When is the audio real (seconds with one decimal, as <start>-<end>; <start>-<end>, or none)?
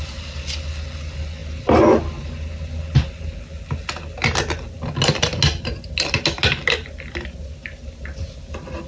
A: 0.0-8.9